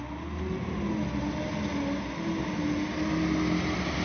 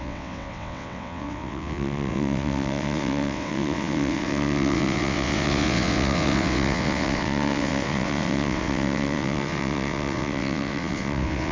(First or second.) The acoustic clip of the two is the first